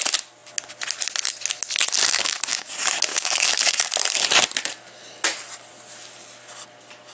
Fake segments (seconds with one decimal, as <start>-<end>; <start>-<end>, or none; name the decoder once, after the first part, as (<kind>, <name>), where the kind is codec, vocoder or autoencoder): 2.0-2.7 (codec, DAC); 3.1-3.9